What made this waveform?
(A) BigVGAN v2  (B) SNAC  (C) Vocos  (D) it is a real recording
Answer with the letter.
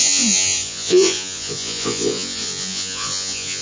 C